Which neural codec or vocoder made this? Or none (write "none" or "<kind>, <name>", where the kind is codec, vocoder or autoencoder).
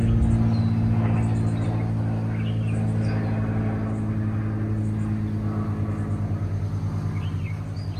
none